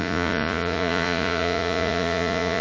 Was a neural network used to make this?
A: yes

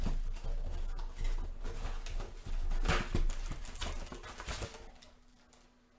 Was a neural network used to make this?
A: no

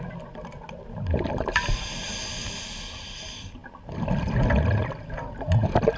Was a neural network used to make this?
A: no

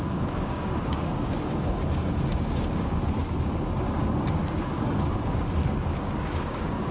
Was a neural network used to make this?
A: yes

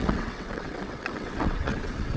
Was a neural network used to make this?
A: yes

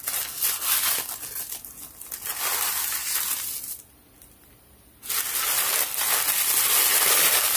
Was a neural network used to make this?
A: no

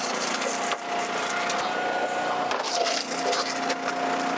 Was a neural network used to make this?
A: no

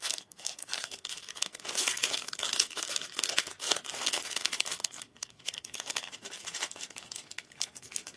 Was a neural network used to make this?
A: yes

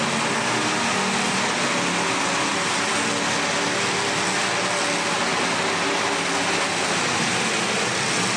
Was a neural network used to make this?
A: no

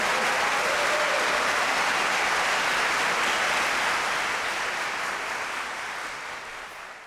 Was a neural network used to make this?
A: no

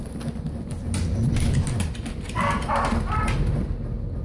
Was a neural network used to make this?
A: yes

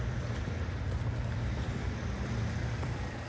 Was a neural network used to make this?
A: yes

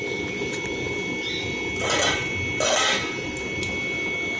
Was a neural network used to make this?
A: no